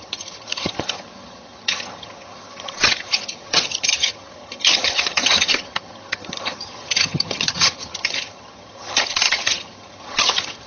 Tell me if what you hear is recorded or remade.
remade